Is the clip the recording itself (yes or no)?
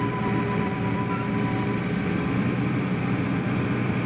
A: no